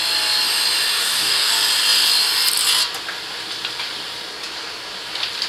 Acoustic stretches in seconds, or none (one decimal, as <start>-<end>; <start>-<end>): 0.0-1.0; 1.5-5.5